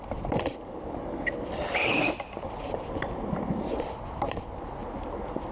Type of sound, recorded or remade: recorded